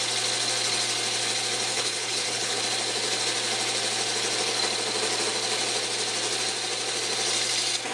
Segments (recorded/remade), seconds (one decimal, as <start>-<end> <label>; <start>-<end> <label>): 0.0-1.7 recorded; 1.7-2.6 remade; 2.6-7.9 recorded